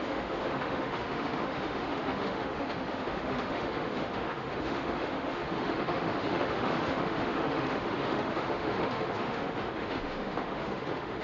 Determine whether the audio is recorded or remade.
remade